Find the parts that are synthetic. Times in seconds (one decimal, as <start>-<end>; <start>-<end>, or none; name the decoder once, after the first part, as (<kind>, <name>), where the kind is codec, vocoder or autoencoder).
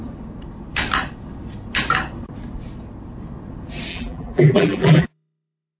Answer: 3.9-5.8 (vocoder, BigVGAN v2)